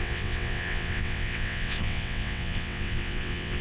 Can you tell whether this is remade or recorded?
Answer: remade